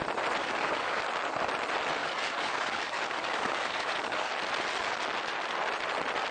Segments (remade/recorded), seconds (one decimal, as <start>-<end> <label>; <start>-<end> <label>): 0.0-0.4 recorded; 0.4-1.0 remade; 1.0-2.0 recorded; 2.0-4.3 remade; 4.3-6.3 recorded